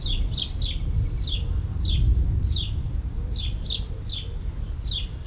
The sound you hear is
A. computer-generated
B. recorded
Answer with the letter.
B